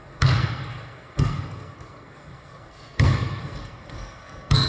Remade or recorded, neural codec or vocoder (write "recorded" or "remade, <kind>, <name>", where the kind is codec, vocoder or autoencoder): remade, codec, SNAC